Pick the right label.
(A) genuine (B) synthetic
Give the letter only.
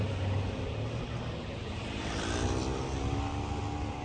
A